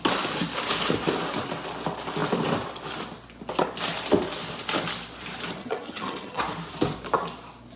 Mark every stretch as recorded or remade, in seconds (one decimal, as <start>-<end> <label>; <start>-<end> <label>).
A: 0.0-5.6 recorded; 5.6-6.4 remade; 6.4-7.8 recorded